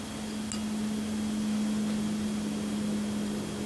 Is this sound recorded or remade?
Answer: recorded